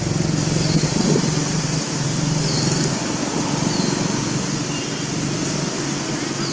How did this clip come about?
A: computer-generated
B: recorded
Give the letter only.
B